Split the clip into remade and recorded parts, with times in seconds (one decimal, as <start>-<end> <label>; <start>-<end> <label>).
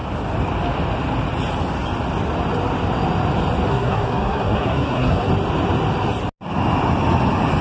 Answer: 0.0-3.7 recorded; 3.7-5.3 remade; 5.3-7.6 recorded